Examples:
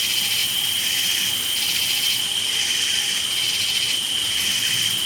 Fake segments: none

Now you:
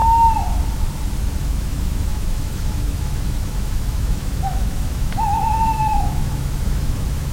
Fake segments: 1.4-7.3 (autoencoder, DAC-VAE)

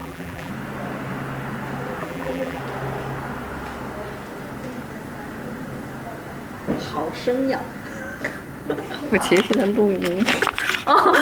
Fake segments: 0.0-0.5 (vocoder, BigVGAN v2); 2.0-2.6

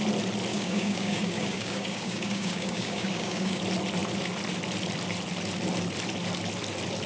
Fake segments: 0.5-3.6 (codec, DAC)

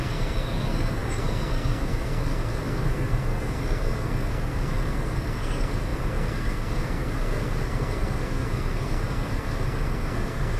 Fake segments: 0.0-10.6 (codec, SNAC)